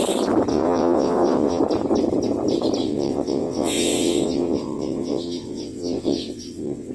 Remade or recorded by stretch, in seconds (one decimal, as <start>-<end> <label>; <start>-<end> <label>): 0.0-0.5 recorded; 0.5-1.6 remade; 1.6-2.8 recorded; 2.8-6.9 remade